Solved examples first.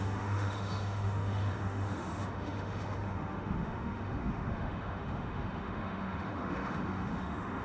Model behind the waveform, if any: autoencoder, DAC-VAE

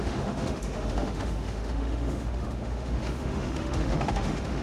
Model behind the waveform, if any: autoencoder, DAC-VAE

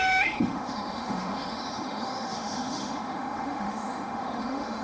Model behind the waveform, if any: autoencoder, DAC-VAE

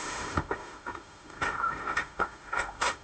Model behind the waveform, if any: autoencoder, DAC-VAE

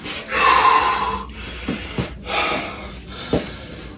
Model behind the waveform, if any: none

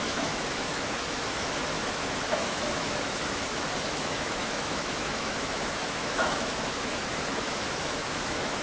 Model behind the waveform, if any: autoencoder, DAC-VAE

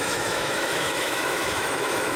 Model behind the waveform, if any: autoencoder, DAC-VAE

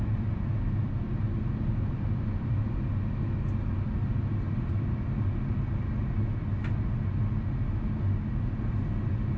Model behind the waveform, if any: none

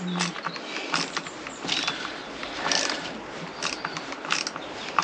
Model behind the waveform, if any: none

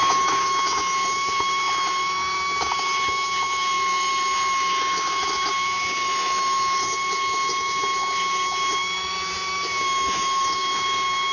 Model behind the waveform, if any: autoencoder, DAC-VAE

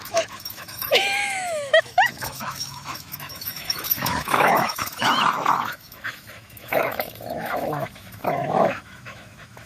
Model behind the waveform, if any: autoencoder, DAC-VAE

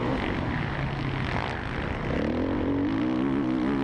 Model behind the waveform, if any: none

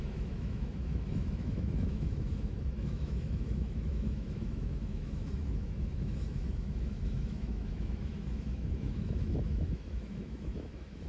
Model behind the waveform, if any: autoencoder, DAC-VAE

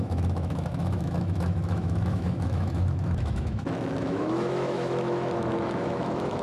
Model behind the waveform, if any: autoencoder, DAC-VAE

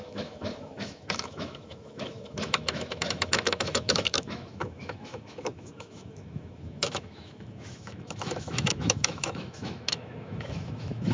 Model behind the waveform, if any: autoencoder, DAC-VAE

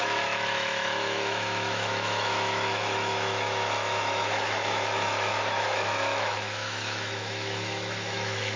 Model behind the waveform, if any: autoencoder, DAC-VAE